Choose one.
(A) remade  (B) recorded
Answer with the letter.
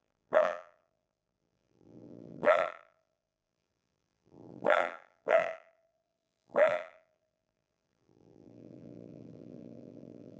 A